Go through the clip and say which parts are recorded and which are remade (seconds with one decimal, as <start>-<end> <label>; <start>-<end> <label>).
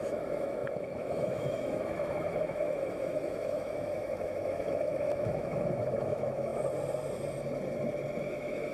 0.0-6.5 remade; 6.5-8.2 recorded; 8.2-8.7 remade